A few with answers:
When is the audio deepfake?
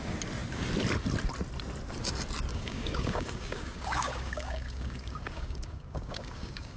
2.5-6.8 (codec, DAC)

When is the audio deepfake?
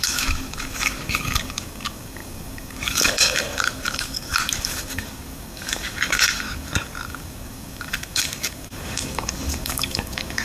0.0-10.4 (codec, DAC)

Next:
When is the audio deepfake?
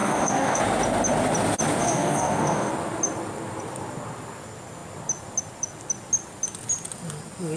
0.0-0.6 (codec, DAC); 1.8-2.7